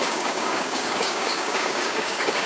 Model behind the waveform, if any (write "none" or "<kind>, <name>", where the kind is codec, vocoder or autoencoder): codec, DAC